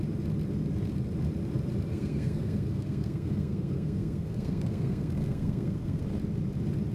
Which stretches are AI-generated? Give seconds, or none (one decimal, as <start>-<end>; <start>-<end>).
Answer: 1.9-6.0